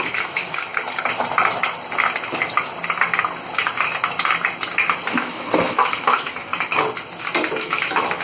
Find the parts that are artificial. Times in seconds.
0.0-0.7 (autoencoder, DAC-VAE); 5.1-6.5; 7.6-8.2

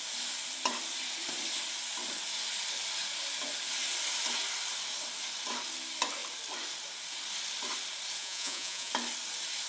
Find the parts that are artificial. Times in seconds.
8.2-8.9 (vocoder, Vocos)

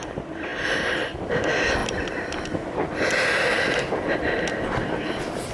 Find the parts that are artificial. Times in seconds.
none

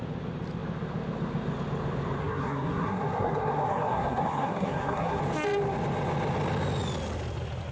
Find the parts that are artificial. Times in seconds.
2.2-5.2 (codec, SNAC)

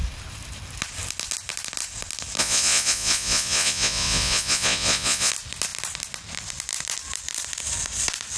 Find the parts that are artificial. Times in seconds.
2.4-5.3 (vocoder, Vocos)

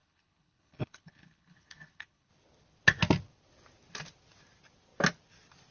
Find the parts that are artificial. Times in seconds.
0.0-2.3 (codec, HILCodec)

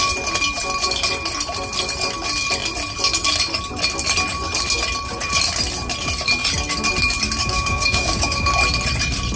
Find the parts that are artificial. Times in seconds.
7.4-8.5 (codec, DAC)